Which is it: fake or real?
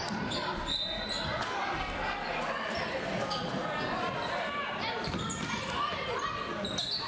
real